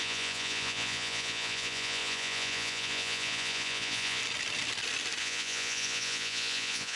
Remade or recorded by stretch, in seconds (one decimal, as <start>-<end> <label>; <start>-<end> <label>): 0.0-4.2 remade; 4.2-5.2 recorded; 5.2-7.0 remade